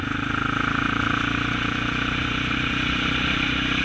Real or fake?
real